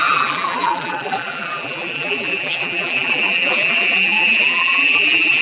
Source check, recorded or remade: remade